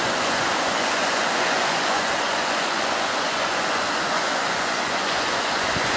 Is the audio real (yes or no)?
no